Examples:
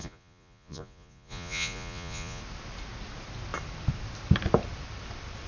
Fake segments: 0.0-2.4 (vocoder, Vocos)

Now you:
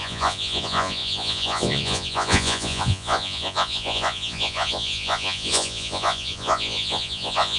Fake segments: 0.0-7.6 (vocoder, Vocos)